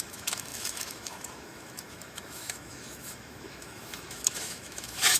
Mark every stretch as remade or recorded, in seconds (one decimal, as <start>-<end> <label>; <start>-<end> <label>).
0.0-5.2 remade